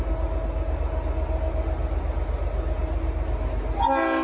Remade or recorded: recorded